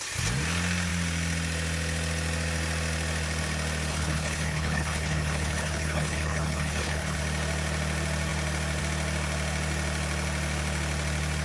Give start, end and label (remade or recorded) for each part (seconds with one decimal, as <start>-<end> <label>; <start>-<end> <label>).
0.0-3.9 recorded; 3.9-7.2 remade; 7.2-11.4 recorded